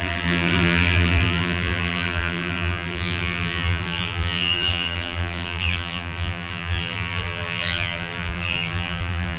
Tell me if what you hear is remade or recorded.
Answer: remade